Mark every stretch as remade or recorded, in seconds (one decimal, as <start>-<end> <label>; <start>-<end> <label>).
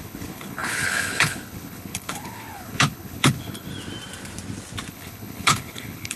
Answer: 0.0-3.7 remade; 3.7-4.9 recorded; 4.9-6.2 remade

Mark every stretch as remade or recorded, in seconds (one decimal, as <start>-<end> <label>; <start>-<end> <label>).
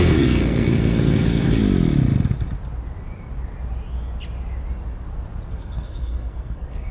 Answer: 0.0-1.6 remade; 1.6-5.5 recorded; 5.5-6.9 remade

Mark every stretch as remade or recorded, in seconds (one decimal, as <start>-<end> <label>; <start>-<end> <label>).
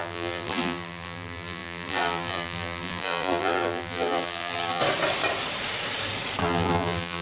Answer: 0.0-4.8 remade; 4.8-6.4 recorded; 6.4-7.2 remade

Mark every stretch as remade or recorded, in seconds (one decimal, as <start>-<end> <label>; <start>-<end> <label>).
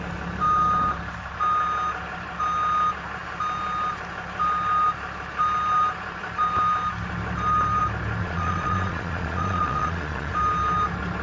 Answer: 0.0-8.2 recorded; 8.2-10.3 remade; 10.3-11.2 recorded